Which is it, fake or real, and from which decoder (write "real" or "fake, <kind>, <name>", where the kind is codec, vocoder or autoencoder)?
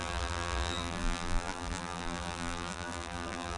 fake, vocoder, BigVGAN v2